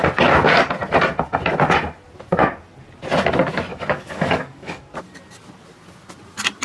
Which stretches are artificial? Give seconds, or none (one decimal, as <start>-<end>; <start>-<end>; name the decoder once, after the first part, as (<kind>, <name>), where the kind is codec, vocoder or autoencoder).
3.7-4.8 (codec, DAC)